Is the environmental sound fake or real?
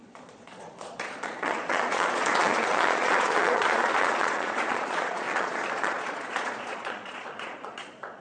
fake